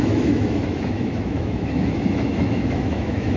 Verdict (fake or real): fake